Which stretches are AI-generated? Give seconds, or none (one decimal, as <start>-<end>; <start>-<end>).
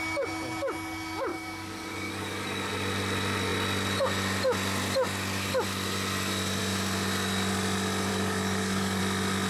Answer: 1.3-2.7; 8.1-9.0